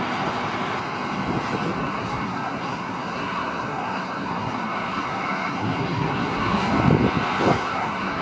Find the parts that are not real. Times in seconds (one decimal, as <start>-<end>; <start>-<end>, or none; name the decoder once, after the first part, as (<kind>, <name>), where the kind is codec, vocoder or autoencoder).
1.8-6.7 (codec, SNAC); 7.5-8.2